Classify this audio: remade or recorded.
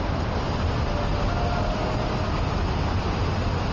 recorded